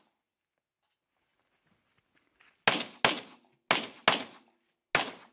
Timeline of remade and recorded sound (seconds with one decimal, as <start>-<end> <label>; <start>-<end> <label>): 0.0-5.3 recorded